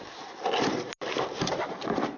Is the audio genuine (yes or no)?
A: yes